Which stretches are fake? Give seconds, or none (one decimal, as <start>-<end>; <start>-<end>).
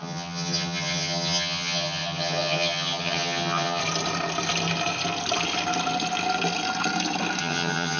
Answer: 0.0-3.8; 7.4-8.0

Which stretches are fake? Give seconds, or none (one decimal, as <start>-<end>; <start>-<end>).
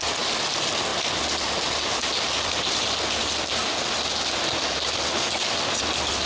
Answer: none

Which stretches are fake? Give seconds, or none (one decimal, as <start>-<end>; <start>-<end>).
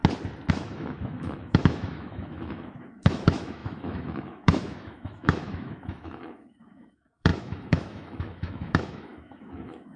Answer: 0.5-10.0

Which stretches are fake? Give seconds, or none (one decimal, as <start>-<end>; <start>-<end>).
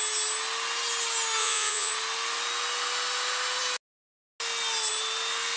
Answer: 1.4-1.9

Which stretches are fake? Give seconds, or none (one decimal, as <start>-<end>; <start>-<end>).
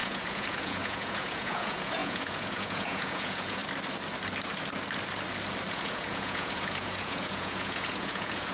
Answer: 0.0-3.6; 5.7-8.5